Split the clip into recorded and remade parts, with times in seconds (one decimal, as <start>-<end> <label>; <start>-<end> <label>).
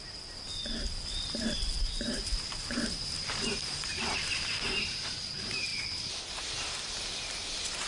0.0-0.6 recorded; 0.6-4.6 remade; 4.6-5.7 recorded; 5.7-6.2 remade; 6.2-7.9 recorded